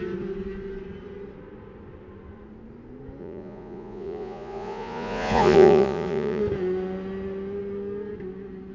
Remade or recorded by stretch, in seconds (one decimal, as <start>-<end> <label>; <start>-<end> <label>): 0.0-3.2 recorded; 3.2-6.4 remade; 6.4-8.7 recorded